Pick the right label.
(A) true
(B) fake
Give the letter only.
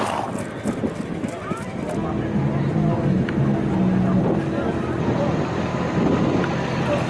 A